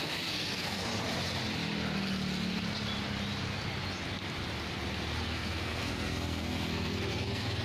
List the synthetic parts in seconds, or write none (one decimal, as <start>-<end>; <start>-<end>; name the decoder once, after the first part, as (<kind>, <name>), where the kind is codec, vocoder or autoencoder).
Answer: 0.0-0.9 (codec, SNAC); 5.2-7.6

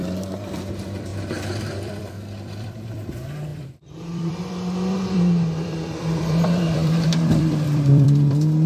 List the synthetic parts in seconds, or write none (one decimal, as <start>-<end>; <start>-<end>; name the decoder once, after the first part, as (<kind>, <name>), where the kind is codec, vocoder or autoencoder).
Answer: 0.0-1.1 (vocoder, BigVGAN v2); 1.6-8.7

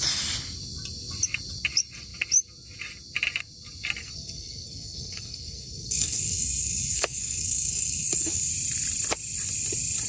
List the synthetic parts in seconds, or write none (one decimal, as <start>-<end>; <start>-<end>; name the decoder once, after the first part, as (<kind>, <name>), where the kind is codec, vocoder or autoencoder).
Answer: 4.0-8.5 (codec, SNAC)

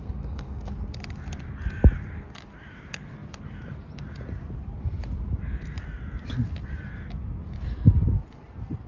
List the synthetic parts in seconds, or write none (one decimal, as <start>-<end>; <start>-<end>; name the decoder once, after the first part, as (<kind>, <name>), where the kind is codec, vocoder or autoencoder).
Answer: 0.0-0.7 (codec, SNAC)

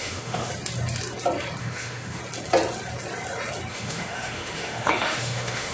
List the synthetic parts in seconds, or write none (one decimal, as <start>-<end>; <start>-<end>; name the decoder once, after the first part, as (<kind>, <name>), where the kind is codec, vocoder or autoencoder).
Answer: 0.0-0.5 (autoencoder, DAC-VAE); 1.6-2.2; 3.7-5.7